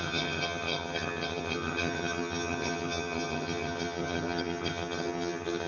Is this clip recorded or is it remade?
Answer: remade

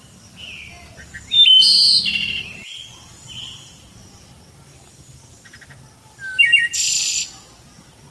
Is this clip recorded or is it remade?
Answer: recorded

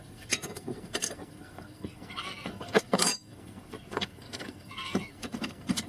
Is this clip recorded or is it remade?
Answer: remade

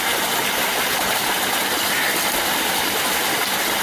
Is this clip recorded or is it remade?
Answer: recorded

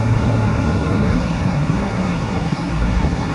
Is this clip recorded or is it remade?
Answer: remade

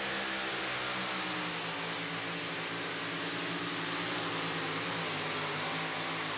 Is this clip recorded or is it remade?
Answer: recorded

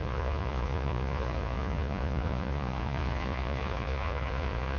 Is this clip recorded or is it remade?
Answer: remade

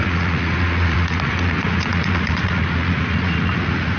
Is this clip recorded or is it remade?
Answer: remade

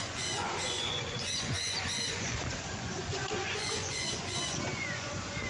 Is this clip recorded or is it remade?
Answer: remade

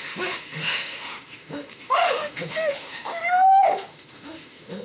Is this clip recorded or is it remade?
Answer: remade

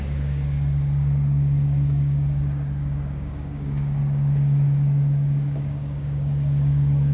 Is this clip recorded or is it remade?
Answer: remade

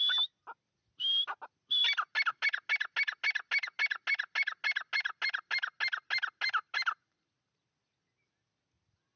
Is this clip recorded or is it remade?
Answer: recorded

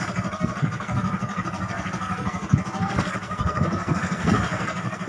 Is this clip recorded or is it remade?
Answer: remade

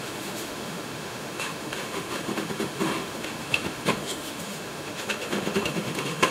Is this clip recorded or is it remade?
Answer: remade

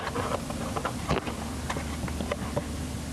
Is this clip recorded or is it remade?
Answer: recorded